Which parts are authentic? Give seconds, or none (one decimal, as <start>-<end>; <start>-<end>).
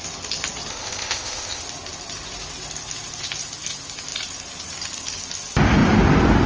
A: 0.0-0.7; 1.6-6.5